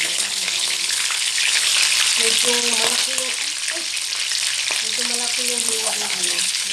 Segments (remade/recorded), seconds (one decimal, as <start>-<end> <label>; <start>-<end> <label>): 0.0-1.7 remade; 1.7-5.7 recorded; 5.7-6.7 remade